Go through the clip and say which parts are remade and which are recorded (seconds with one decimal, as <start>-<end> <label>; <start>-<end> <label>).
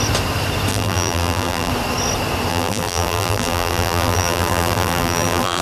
0.0-0.7 recorded; 0.7-1.7 remade; 1.7-2.5 recorded; 2.5-5.6 remade